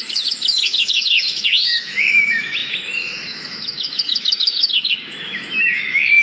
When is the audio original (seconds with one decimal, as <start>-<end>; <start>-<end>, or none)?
none